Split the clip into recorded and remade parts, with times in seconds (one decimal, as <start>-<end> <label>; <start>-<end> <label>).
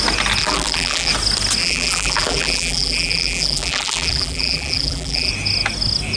0.0-0.4 recorded; 0.4-1.1 remade; 1.1-1.6 recorded; 1.6-5.3 remade; 5.3-6.2 recorded